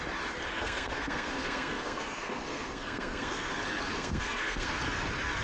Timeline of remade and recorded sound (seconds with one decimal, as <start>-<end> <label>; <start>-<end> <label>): 0.0-0.5 recorded; 0.5-3.5 remade; 3.5-3.9 recorded; 3.9-4.8 remade; 4.8-5.4 recorded